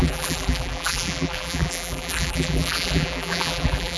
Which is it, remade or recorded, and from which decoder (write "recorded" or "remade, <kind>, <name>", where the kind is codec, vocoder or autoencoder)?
remade, vocoder, BigVGAN v2